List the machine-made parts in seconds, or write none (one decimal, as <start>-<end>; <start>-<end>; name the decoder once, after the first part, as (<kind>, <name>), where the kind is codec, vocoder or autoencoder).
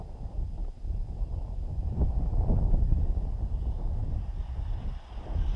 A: 0.6-3.0 (vocoder, BigVGAN v2); 4.0-4.6